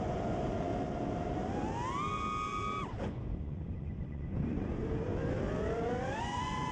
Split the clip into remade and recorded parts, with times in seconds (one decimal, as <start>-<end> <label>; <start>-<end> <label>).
0.0-0.7 remade; 0.7-3.0 recorded; 3.0-5.1 remade; 5.1-6.2 recorded; 6.2-6.7 remade